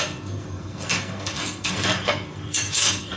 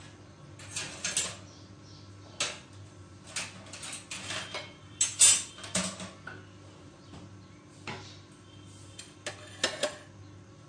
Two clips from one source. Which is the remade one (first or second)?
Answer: first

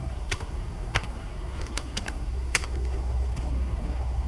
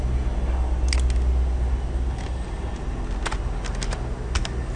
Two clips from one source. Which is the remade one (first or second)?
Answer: first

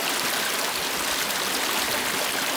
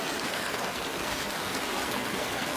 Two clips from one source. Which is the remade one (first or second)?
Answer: second